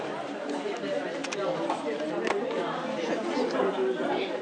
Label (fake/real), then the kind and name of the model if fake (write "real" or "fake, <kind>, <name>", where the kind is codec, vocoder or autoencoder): real